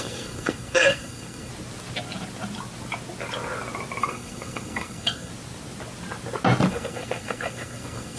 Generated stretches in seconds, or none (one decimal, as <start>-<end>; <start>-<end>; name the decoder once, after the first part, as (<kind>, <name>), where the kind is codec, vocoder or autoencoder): 0.0-1.5 (codec, SNAC); 4.0-5.3; 6.7-8.2